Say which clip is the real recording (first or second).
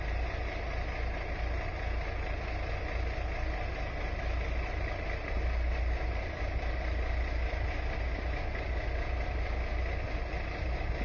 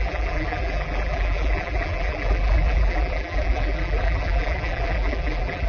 first